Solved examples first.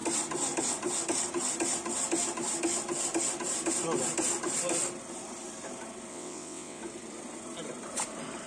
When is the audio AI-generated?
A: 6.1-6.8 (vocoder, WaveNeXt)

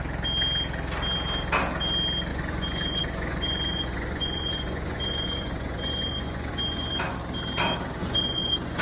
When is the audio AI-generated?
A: 2.3-7.0 (vocoder, Vocos); 8.0-8.8

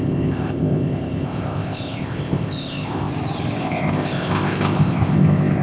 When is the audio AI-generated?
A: 0.0-3.1 (codec, ZipCodec); 3.6-5.6